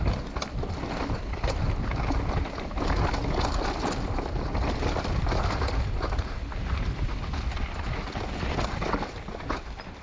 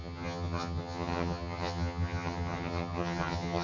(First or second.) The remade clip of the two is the second